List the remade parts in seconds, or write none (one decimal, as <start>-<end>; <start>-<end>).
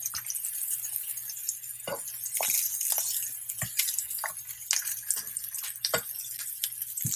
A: none